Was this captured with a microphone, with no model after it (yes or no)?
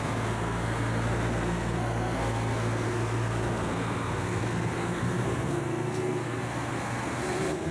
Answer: no